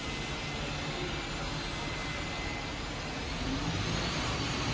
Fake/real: real